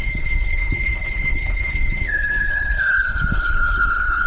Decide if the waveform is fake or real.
fake